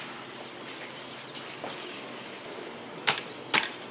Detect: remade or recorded recorded